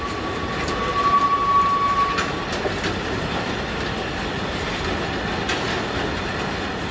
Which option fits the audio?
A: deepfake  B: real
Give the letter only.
B